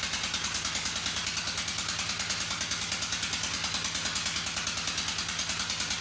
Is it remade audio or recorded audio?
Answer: recorded